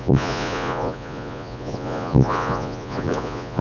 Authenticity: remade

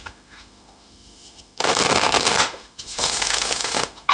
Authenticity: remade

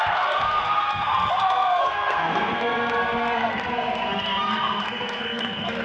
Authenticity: remade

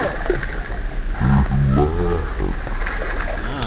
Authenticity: recorded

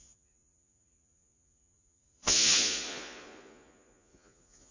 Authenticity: remade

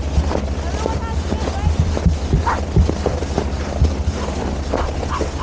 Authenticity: recorded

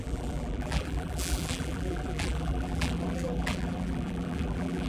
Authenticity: remade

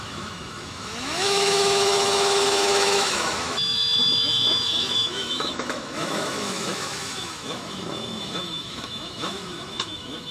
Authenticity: remade